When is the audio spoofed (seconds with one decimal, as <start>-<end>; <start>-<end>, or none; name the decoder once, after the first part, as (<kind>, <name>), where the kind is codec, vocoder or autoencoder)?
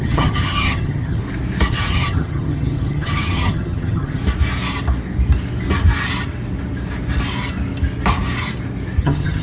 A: 0.0-1.2 (vocoder, HiFi-GAN); 1.7-4.2; 9.0-9.4